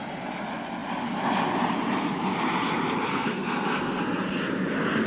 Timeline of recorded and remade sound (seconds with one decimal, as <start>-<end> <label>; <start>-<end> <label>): 0.0-3.1 recorded; 3.1-4.0 remade; 4.0-5.1 recorded